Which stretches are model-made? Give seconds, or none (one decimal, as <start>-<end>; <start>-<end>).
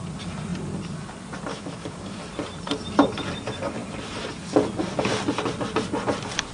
1.5-2.2